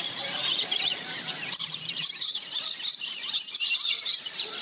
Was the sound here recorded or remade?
remade